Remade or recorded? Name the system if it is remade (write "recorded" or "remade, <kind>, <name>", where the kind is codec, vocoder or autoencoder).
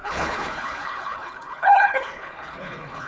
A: remade, codec, HILCodec